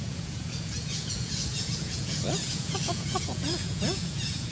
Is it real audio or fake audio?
fake